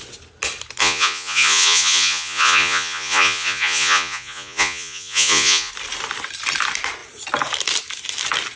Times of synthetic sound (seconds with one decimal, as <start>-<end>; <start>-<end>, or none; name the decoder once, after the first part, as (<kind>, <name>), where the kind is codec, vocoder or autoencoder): 0.8-5.7 (vocoder, Vocos)